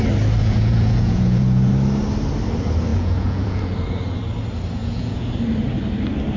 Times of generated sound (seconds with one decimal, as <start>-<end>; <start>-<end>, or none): 0.4-1.7; 2.9-3.6; 4.8-5.3